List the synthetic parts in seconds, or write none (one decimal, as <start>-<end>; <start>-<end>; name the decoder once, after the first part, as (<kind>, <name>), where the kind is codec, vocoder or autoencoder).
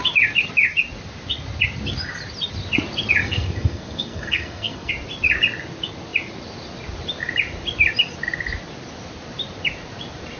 3.2-4.9 (codec, SNAC)